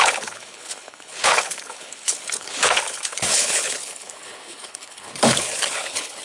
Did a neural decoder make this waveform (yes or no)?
yes